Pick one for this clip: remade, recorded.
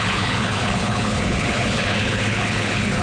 remade